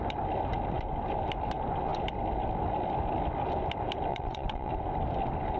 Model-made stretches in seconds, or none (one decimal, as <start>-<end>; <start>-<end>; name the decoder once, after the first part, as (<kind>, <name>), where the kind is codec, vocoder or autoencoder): 4.1-4.7 (vocoder, WaveNeXt)

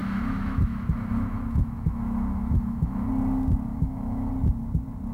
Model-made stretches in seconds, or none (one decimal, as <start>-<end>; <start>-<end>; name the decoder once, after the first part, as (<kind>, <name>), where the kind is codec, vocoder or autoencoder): 0.0-3.1 (autoencoder, DAC-VAE); 3.7-4.3

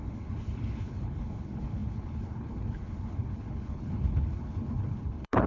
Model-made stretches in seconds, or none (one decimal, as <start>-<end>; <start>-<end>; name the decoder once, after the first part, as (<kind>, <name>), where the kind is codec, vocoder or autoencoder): 0.0-5.5 (codec, HILCodec)

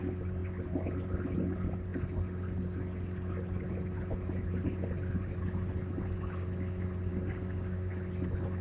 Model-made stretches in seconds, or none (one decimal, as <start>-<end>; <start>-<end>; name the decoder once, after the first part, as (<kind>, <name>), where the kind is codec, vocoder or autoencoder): 7.1-7.9 (codec, DAC)

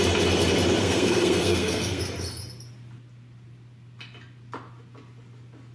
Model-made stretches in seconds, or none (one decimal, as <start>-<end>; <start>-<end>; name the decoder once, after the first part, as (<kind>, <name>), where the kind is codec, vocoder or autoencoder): 0.8-2.0 (codec, SNAC)

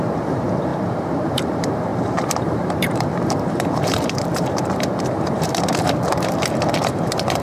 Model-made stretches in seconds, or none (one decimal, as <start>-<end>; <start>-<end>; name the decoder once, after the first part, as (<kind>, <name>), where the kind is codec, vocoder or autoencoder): 0.0-7.4 (vocoder, BigVGAN v2)